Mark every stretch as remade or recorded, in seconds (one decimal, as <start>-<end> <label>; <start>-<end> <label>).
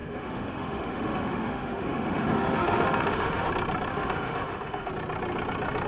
0.0-3.5 remade; 3.5-3.9 recorded; 3.9-4.9 remade; 4.9-5.9 recorded